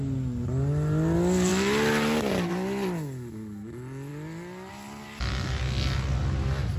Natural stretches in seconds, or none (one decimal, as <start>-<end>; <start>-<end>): 0.0-6.8